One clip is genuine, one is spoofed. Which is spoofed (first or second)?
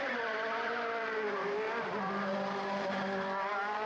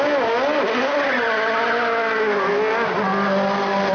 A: first